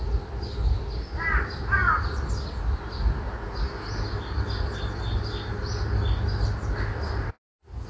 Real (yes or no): yes